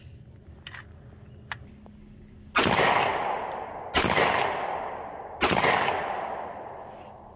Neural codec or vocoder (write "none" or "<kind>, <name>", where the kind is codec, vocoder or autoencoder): none